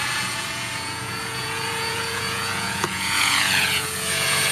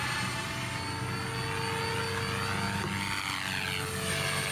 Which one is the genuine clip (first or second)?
second